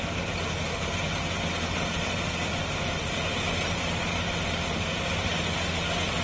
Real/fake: real